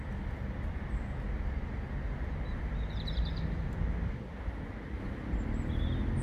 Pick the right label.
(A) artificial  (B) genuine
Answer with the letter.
B